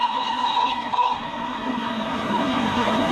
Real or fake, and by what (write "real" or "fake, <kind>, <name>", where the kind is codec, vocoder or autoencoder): fake, codec, SNAC